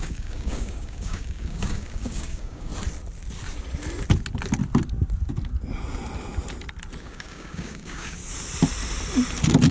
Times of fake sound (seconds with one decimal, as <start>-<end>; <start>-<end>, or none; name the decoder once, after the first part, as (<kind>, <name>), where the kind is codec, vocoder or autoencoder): 0.0-2.7 (codec, DAC); 7.0-8.2